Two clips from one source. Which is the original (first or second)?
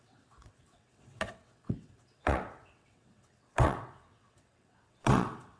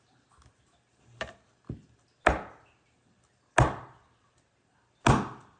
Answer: second